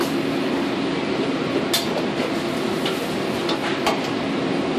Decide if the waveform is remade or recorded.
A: recorded